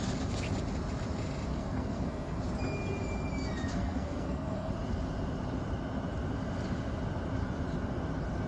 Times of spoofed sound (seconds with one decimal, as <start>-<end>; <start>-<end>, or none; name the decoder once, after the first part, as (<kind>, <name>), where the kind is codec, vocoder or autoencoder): 1.5-2.4 (codec, SNAC); 3.7-4.7